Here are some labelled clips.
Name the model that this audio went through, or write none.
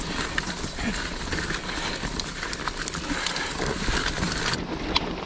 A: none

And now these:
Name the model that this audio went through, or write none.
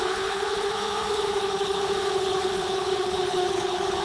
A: codec, HILCodec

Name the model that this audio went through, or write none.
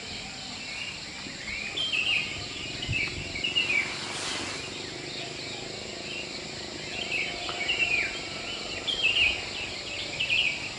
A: none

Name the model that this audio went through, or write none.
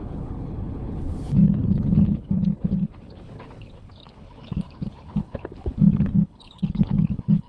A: codec, HILCodec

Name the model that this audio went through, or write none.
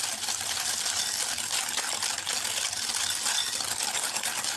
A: none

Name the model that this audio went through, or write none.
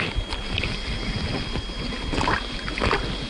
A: none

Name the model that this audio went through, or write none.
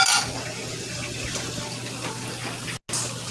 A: none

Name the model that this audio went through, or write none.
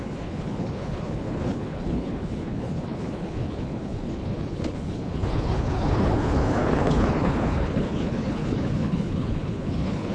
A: codec, HILCodec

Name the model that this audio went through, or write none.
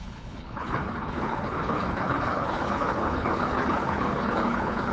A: codec, HILCodec